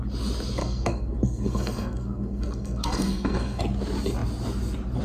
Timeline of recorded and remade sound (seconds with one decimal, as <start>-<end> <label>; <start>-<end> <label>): 0.0-0.6 recorded; 0.6-3.6 remade; 3.6-5.0 recorded